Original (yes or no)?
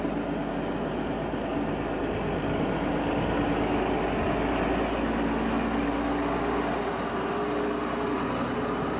yes